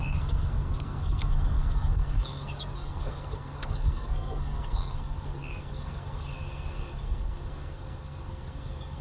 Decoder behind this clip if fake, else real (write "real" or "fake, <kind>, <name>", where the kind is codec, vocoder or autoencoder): fake, codec, SNAC